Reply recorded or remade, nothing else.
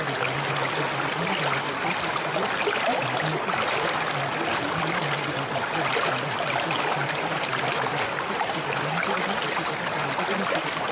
recorded